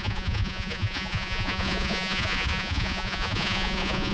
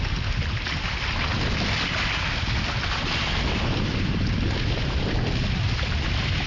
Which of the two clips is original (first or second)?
second